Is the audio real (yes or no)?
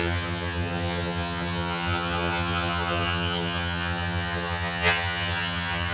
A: no